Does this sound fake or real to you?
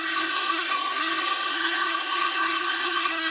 fake